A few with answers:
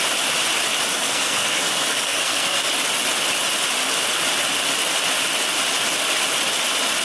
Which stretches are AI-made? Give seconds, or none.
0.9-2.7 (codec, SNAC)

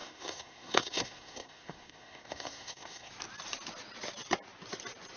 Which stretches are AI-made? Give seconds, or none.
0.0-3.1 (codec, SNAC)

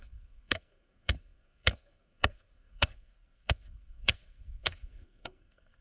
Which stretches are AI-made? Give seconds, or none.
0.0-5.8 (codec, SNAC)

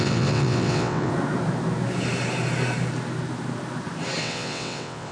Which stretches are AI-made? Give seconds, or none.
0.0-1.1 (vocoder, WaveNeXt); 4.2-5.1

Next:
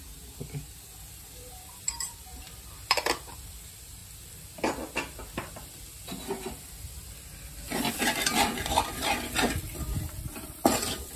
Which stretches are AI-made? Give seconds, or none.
0.0-4.0 (vocoder, BigVGAN v2); 7.9-11.2